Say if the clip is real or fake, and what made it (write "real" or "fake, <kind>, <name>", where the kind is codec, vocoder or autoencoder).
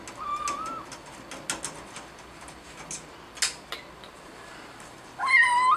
real